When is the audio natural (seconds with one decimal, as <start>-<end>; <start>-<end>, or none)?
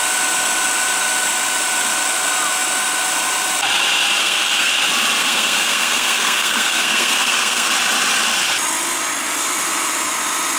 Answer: 0.0-4.2; 4.7-5.2; 7.7-10.6